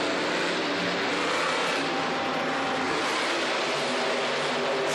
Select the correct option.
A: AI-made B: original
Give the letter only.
B